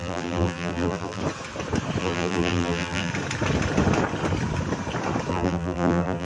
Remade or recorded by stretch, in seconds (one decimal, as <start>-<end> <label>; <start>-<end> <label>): 0.0-1.2 remade; 1.2-2.0 recorded; 2.0-3.1 remade; 3.1-5.3 recorded; 5.3-6.2 remade